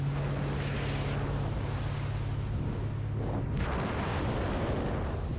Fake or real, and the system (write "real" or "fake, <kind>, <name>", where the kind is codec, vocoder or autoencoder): real